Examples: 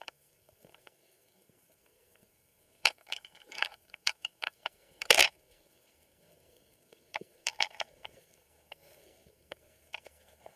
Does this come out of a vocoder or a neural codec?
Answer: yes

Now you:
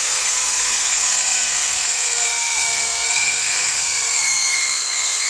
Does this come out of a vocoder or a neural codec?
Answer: yes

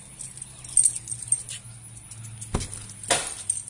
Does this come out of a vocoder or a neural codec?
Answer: no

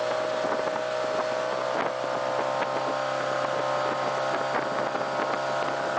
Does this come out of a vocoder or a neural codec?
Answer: no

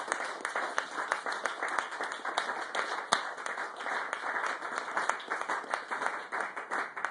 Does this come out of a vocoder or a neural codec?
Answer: no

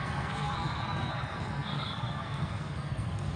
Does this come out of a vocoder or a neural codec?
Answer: yes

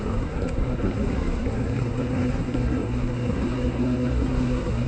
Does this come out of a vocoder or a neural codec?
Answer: yes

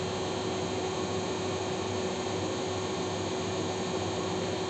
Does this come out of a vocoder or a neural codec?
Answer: no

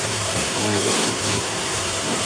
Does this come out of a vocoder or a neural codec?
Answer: yes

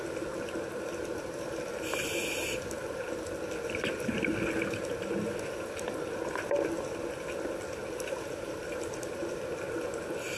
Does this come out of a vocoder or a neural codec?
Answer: no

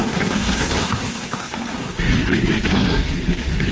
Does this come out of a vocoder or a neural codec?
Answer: yes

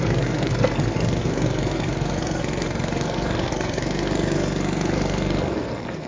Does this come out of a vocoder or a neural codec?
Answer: yes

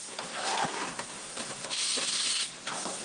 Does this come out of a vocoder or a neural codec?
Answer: yes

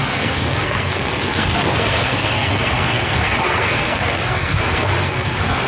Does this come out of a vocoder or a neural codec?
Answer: yes